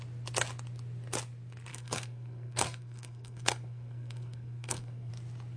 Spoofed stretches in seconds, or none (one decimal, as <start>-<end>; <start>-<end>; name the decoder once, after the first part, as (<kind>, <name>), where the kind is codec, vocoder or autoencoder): 1.7-5.1 (codec, SNAC)